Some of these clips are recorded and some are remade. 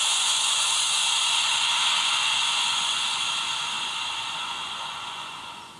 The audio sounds remade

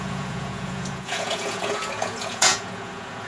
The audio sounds remade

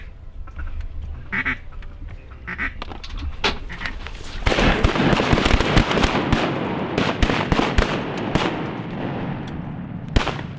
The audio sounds recorded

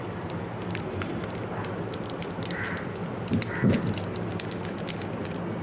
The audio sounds recorded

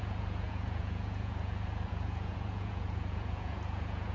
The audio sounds remade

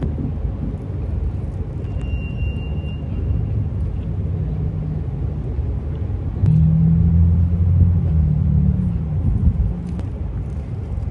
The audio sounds recorded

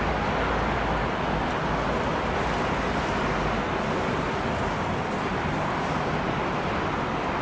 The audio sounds recorded